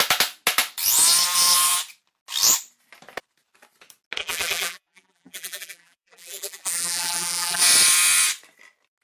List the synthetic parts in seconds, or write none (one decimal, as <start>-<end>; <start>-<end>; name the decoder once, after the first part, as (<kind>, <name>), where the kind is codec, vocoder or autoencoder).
4.2-7.6 (vocoder, BigVGAN v2)